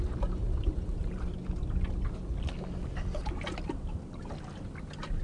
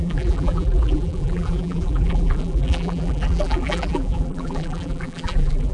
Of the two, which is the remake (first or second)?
second